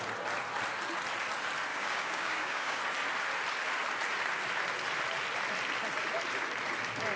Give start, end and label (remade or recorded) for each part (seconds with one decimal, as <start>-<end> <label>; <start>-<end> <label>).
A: 0.0-1.7 recorded; 1.7-2.8 remade; 2.8-7.2 recorded